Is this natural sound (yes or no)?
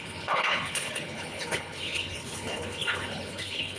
no